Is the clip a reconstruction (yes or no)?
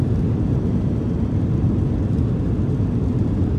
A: no